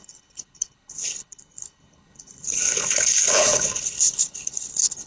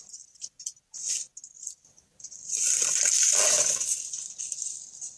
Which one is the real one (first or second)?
second